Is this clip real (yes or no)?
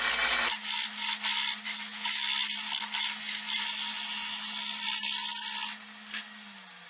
yes